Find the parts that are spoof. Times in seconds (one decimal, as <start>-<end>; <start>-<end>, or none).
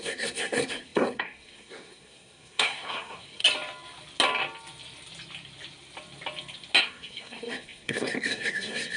0.0-3.4; 6.8-9.0